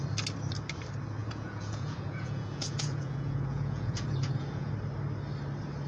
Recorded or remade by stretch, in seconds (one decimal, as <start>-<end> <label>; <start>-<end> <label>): 0.0-1.2 recorded; 1.2-4.7 remade; 4.7-5.9 recorded